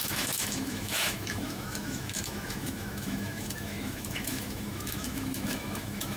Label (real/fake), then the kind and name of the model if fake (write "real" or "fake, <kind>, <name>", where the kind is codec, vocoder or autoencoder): fake, autoencoder, DAC-VAE